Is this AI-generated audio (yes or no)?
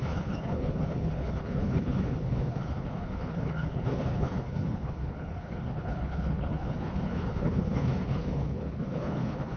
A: yes